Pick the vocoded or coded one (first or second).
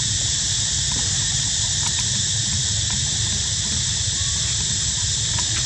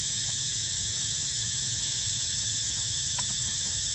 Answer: second